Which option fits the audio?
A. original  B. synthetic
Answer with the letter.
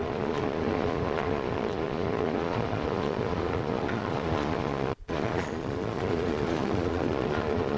B